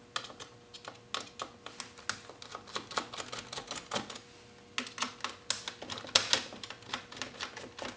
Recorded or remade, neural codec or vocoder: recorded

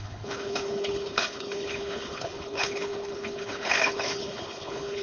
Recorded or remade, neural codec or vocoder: remade, codec, HILCodec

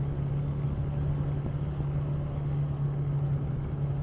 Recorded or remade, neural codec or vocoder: recorded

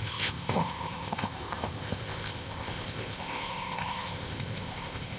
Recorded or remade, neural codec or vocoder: remade, codec, ZipCodec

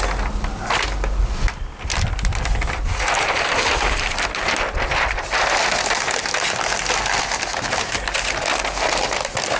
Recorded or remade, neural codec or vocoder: recorded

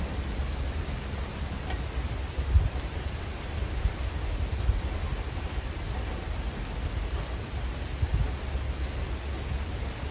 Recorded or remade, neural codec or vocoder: recorded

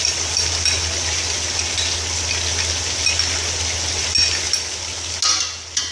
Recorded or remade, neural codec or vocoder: recorded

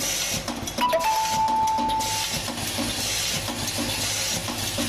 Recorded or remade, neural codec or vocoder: recorded